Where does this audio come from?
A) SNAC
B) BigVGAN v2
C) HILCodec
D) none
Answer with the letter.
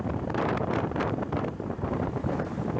B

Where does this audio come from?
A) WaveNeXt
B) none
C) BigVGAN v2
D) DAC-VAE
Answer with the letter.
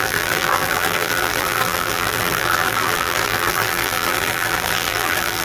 C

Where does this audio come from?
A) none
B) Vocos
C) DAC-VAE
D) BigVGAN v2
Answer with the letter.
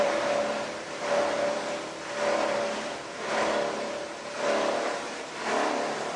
D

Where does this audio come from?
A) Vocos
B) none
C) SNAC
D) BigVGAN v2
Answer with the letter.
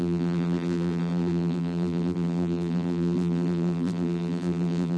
D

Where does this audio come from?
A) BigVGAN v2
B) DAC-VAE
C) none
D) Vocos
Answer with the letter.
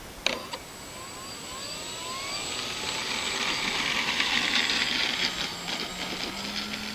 C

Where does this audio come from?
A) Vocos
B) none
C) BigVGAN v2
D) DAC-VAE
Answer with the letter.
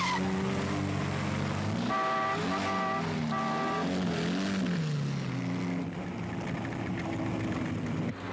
B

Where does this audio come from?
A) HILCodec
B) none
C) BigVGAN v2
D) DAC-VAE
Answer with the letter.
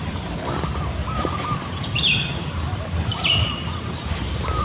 C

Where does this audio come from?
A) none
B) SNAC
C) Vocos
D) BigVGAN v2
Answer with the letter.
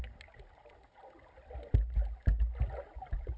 A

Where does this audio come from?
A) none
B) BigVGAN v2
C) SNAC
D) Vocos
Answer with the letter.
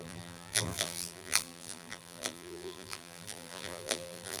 B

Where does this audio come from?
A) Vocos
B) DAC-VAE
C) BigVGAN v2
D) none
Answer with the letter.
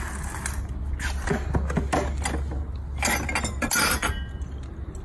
D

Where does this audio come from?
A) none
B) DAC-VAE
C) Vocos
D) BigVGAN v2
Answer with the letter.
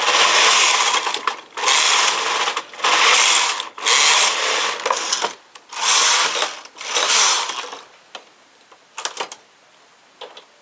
A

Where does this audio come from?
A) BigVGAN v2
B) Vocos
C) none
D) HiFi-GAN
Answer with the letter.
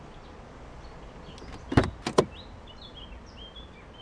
C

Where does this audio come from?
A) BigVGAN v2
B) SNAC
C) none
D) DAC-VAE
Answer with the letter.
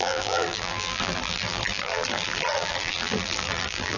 A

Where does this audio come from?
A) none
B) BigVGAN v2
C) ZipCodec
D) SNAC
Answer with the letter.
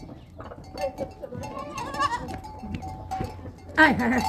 A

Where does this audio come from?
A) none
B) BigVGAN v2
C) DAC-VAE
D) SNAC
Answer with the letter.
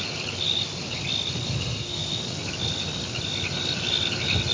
A